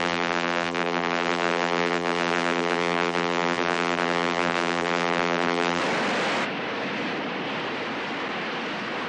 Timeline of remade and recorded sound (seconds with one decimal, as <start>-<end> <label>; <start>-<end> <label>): 0.0-5.8 remade; 5.8-9.1 recorded